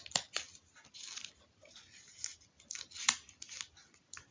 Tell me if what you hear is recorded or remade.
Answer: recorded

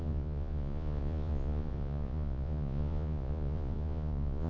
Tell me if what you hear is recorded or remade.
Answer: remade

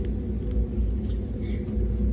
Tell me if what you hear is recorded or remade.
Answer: recorded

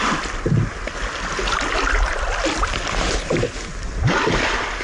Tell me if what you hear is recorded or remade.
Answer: recorded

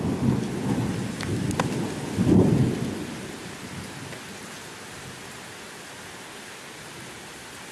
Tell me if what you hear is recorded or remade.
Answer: recorded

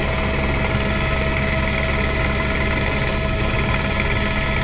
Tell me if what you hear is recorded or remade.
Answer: recorded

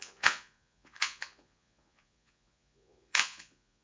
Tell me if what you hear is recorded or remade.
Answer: remade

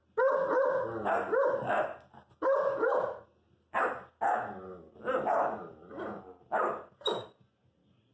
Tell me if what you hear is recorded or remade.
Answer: recorded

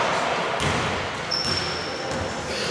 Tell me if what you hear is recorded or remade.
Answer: recorded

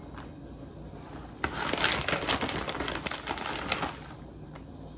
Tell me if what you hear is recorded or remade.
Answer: recorded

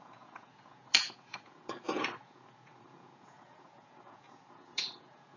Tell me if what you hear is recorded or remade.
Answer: remade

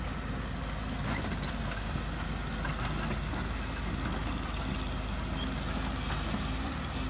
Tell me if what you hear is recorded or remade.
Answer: recorded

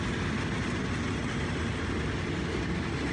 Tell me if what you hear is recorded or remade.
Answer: recorded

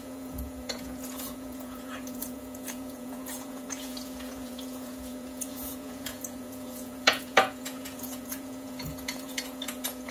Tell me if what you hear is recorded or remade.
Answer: remade